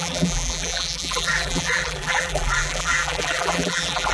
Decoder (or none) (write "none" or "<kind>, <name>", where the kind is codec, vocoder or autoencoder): vocoder, BigVGAN v2